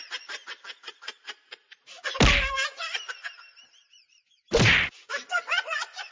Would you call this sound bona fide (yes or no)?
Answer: yes